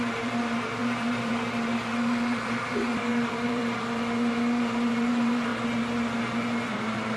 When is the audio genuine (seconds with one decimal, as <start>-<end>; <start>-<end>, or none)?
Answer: 3.6-4.9; 5.5-6.2